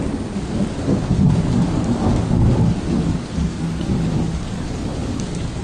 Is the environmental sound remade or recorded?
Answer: remade